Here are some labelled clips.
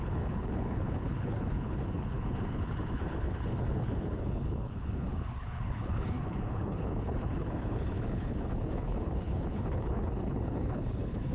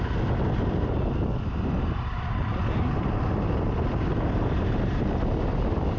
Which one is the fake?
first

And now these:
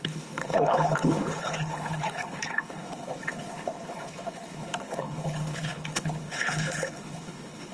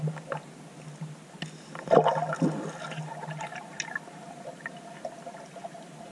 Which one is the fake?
first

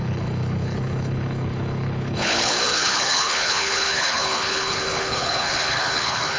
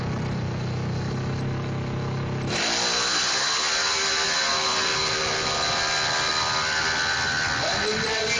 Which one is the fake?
first